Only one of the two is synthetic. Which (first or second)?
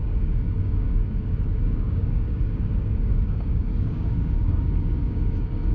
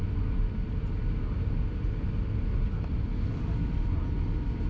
first